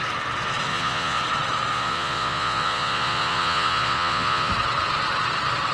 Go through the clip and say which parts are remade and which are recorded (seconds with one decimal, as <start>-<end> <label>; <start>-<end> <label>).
0.0-0.7 recorded; 0.7-1.2 remade; 1.2-1.7 recorded; 1.7-4.5 remade; 4.5-5.7 recorded